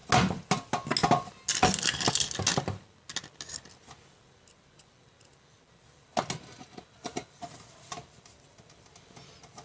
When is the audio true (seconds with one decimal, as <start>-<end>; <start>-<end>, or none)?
0.0-9.6